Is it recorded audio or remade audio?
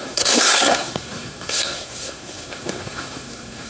remade